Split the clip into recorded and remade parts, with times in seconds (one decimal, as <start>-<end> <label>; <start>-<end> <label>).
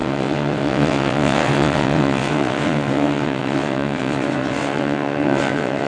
0.0-5.9 remade